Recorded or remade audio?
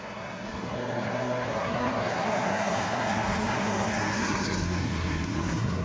remade